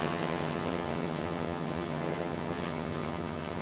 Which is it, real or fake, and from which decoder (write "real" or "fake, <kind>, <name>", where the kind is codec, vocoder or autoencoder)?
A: fake, vocoder, HiFi-GAN